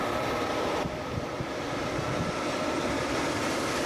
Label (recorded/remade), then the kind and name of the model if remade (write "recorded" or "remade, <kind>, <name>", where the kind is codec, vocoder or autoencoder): remade, vocoder, BigVGAN v2